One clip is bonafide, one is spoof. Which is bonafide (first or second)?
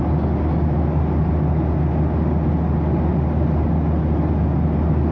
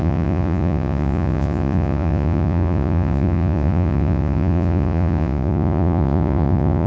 first